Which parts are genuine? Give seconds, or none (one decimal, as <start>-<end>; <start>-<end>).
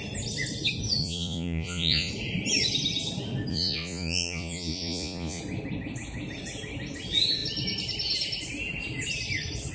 0.0-1.0; 2.1-3.5; 5.4-9.7